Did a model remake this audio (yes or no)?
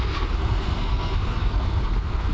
yes